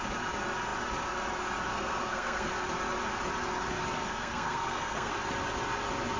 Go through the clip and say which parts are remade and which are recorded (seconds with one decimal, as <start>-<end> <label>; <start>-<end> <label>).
0.0-1.7 recorded; 1.7-2.5 remade; 2.5-4.0 recorded; 4.0-5.1 remade; 5.1-6.2 recorded